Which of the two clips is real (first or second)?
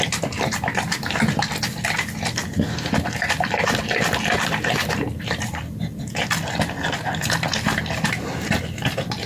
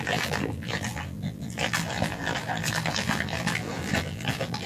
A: first